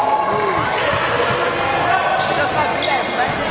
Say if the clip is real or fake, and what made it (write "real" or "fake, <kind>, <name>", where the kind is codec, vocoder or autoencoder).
real